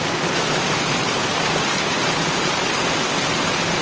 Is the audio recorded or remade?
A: recorded